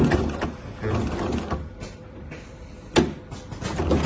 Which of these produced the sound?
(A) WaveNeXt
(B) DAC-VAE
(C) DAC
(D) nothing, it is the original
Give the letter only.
D